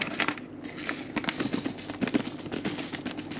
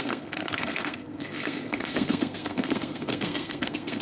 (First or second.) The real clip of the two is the first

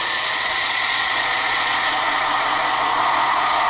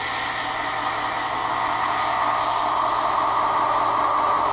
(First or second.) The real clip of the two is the second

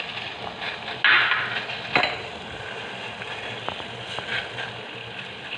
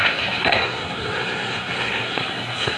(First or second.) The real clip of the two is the first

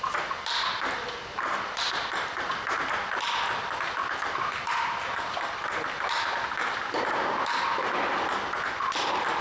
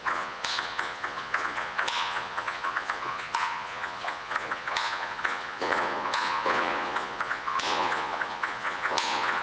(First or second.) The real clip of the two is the first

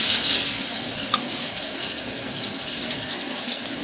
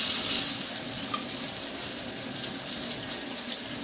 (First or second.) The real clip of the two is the second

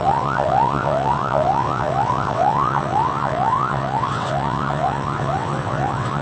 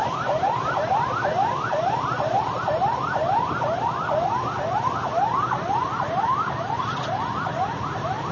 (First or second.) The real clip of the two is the second